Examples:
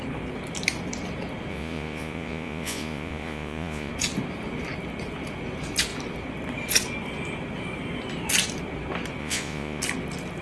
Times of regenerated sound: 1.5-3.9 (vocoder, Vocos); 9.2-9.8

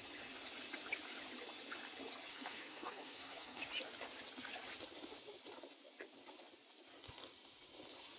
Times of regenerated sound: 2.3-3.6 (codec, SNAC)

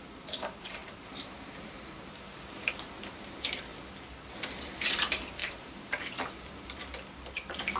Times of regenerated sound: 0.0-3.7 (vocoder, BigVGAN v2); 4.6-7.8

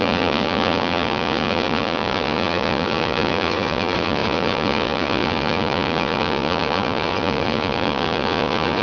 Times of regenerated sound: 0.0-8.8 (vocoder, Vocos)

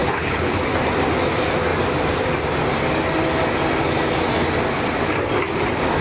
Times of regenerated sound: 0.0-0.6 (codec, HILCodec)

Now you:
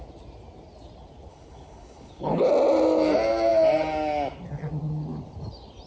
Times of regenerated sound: 1.3-2.5 (codec, HILCodec)

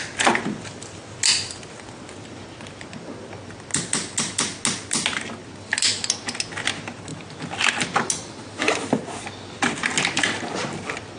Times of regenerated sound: none

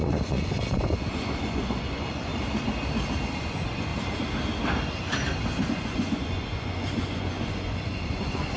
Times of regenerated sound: 0.0-2.3 (vocoder, Vocos); 3.4-3.9; 5.7-8.6